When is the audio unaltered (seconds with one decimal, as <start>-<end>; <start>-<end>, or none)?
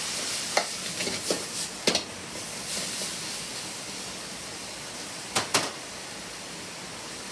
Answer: 0.0-7.3